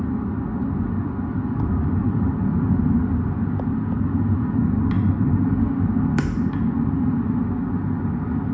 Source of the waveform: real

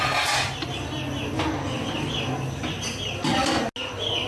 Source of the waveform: real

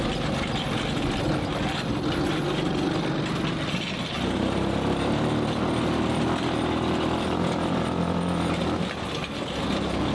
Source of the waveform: real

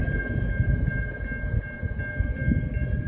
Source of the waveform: real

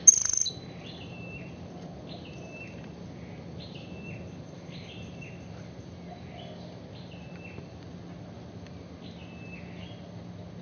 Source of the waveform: real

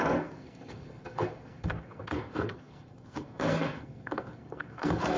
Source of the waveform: fake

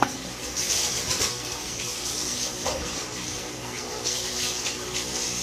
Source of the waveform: fake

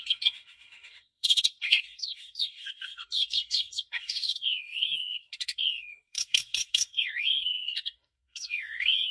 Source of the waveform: fake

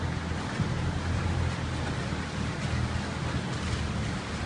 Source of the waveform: real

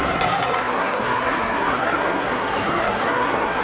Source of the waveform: fake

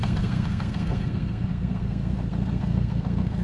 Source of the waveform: fake